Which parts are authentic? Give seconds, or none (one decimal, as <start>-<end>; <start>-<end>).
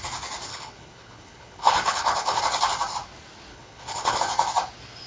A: 0.0-0.5; 2.4-3.5; 4.2-5.1